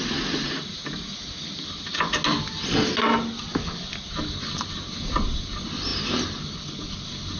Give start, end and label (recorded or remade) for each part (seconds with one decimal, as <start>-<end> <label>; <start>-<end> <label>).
0.0-7.4 recorded